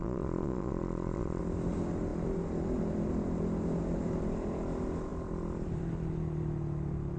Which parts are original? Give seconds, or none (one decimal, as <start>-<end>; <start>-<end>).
1.4-7.2

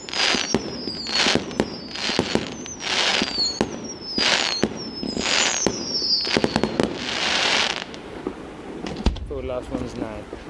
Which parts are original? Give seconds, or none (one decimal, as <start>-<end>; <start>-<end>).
0.0-10.5

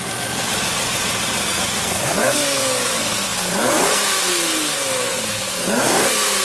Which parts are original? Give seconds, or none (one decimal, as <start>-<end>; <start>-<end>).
0.5-1.4

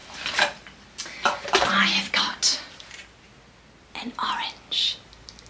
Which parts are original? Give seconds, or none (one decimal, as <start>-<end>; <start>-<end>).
0.0-5.5

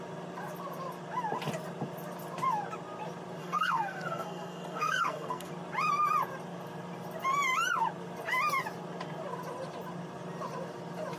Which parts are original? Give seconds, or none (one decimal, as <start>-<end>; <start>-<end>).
0.0-3.4; 5.5-11.2

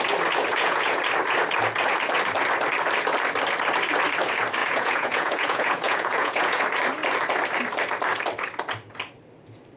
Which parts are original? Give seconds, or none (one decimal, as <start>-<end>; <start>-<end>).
0.0-0.5; 1.0-4.6; 6.6-9.8